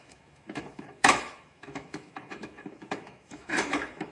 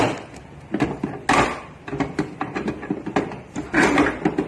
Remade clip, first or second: first